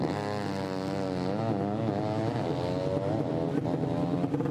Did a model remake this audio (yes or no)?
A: no